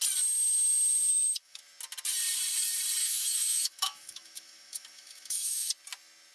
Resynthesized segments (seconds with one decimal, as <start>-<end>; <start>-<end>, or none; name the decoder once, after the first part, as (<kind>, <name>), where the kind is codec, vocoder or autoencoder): 1.1-1.6 (autoencoder, DAC-VAE); 3.0-5.7